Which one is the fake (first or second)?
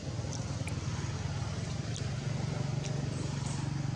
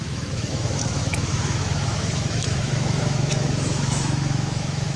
second